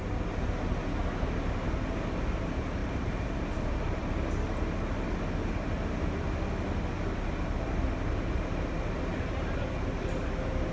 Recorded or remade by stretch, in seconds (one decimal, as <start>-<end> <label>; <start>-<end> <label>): 0.0-2.8 recorded; 2.8-4.1 remade; 4.1-9.1 recorded; 9.1-9.6 remade; 9.6-10.7 recorded